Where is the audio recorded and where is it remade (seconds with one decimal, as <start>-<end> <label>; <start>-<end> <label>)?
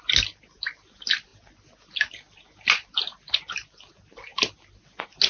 0.0-5.3 recorded